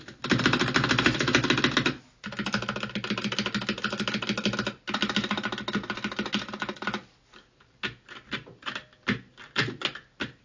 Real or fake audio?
real